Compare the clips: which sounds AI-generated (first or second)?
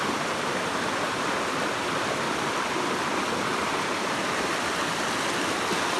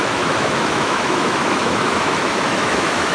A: second